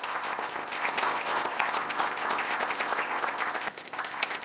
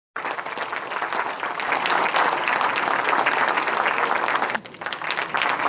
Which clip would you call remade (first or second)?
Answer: first